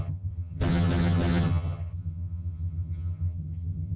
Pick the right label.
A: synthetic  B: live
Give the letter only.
A